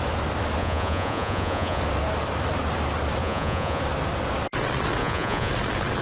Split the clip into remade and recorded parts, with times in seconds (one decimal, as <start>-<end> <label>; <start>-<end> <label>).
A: 0.0-0.6 recorded; 0.6-1.8 remade; 1.8-3.2 recorded; 3.2-3.8 remade; 3.8-5.0 recorded; 5.0-5.5 remade; 5.5-6.0 recorded